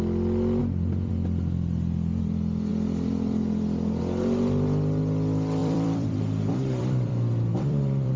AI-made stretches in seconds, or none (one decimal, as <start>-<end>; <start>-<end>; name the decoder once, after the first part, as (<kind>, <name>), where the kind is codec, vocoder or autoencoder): 0.6-1.1 (vocoder, BigVGAN v2); 2.7-4.0; 5.6-8.2